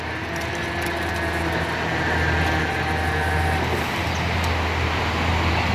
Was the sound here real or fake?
real